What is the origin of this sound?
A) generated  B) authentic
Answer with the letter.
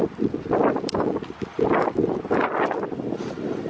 B